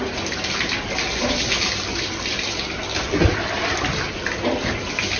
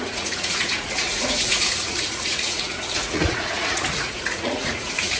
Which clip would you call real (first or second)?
first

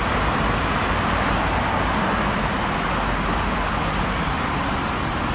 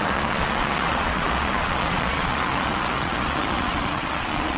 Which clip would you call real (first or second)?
first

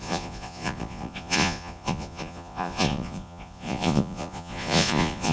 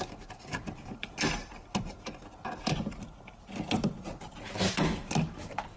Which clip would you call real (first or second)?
second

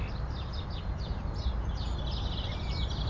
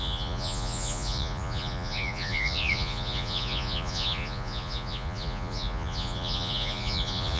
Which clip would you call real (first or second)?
first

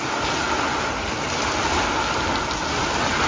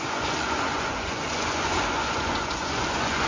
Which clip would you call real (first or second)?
first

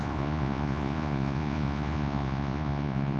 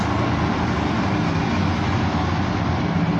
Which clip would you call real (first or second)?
second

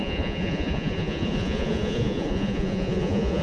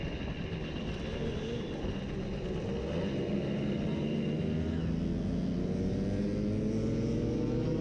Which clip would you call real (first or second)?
second